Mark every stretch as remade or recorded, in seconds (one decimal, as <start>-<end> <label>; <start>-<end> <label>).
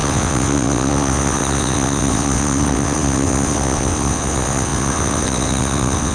0.0-6.1 remade